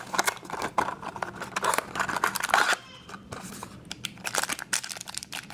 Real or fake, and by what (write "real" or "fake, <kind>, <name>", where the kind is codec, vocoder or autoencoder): fake, vocoder, BigVGAN v2